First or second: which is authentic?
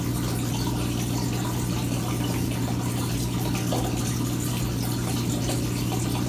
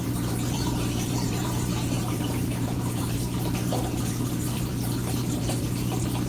first